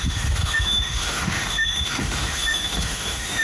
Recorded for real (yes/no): no